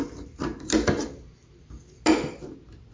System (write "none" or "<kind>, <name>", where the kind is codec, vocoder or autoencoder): none